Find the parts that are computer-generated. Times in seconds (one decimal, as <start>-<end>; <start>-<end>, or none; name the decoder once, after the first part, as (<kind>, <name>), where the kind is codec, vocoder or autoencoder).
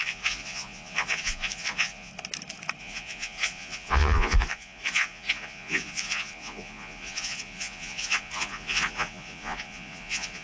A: 0.0-2.1 (vocoder, Vocos); 2.8-10.4